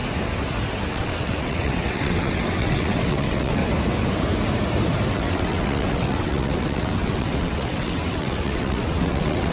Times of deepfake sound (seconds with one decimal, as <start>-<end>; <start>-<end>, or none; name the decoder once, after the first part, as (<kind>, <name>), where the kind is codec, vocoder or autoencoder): 0.9-3.6 (vocoder, WaveNeXt); 5.1-9.5